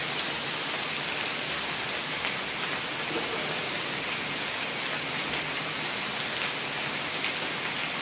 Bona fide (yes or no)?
yes